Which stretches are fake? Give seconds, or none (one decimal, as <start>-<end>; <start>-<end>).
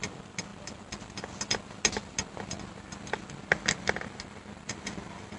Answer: none